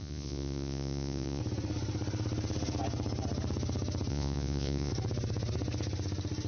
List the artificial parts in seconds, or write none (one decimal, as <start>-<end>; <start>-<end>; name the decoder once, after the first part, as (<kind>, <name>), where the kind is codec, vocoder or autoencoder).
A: 0.0-1.4 (vocoder, Vocos); 4.1-4.9